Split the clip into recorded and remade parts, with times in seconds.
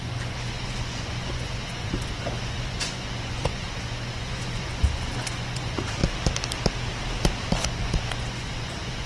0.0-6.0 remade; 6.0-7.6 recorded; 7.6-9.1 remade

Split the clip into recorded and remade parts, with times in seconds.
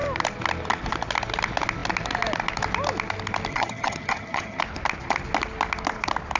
0.0-3.5 recorded; 3.5-4.6 remade; 4.6-6.4 recorded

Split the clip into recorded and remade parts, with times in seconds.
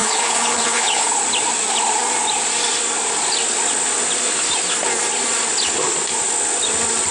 0.0-1.1 remade; 1.1-7.1 recorded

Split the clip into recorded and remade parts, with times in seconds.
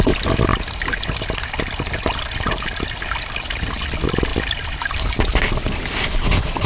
0.0-6.7 recorded